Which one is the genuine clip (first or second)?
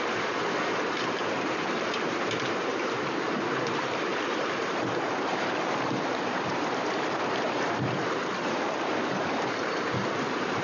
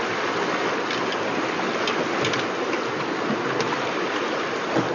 second